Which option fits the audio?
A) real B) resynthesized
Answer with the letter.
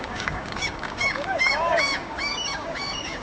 B